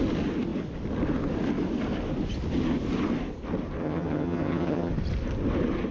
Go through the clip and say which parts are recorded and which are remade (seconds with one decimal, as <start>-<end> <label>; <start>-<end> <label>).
0.0-3.8 recorded; 3.8-4.9 remade; 4.9-5.9 recorded